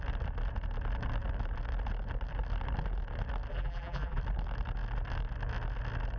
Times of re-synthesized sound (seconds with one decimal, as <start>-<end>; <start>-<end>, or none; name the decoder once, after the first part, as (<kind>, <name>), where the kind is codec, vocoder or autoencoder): 3.5-4.2 (vocoder, BigVGAN v2)

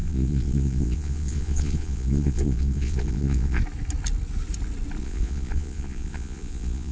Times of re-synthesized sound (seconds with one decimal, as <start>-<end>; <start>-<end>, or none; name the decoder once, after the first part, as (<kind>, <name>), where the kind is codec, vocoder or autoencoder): 0.0-3.6 (vocoder, Vocos); 5.0-6.9

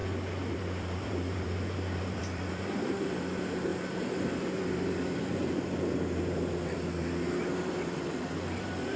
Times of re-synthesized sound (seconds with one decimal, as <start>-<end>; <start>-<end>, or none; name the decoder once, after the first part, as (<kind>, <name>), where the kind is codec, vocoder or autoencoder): 0.5-9.0 (vocoder, BigVGAN v2)

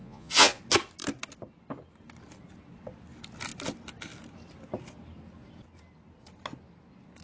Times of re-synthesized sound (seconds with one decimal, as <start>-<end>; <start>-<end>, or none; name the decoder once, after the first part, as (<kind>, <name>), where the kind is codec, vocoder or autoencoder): 0.0-0.6 (vocoder, Vocos)

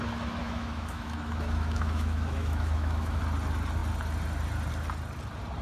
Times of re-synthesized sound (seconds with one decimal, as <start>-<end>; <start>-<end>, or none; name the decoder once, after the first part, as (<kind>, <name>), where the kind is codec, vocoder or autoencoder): 0.4-3.2 (autoencoder, DAC-VAE)